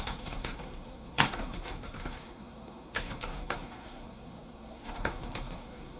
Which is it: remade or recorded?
remade